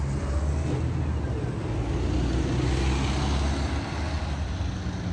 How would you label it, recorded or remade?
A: recorded